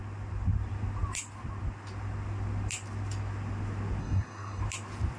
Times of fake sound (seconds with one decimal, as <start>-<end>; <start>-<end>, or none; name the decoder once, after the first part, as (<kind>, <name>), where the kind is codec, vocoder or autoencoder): 4.0-4.6 (codec, SNAC)